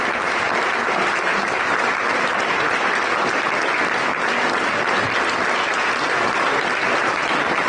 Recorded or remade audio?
recorded